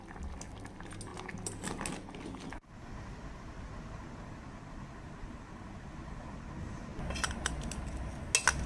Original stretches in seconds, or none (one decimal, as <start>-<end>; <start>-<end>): 0.0-8.7